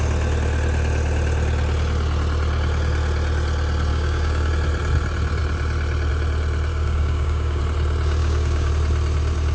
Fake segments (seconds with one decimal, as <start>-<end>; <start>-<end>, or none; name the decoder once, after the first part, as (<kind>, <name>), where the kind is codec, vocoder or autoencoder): 3.9-4.5 (codec, DAC); 6.7-7.6; 8.2-8.7